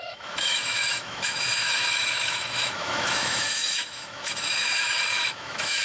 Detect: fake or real fake